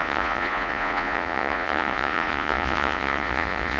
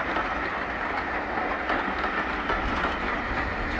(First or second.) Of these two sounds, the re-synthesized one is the first